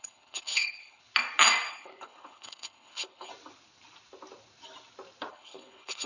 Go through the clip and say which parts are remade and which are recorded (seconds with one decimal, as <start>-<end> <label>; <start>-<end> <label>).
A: 0.0-1.0 remade; 1.0-1.7 recorded; 1.7-3.3 remade; 3.3-5.3 recorded; 5.3-6.1 remade